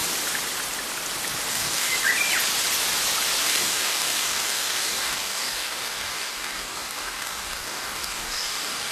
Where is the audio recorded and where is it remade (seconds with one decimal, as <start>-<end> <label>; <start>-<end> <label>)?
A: 0.0-1.5 recorded; 1.5-1.9 remade; 1.9-3.4 recorded; 3.4-8.9 remade